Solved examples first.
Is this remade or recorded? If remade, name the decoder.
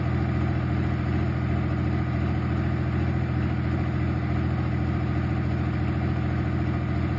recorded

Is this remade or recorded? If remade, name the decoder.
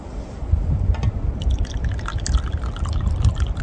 recorded